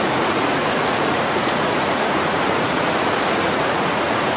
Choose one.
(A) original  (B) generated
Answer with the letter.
B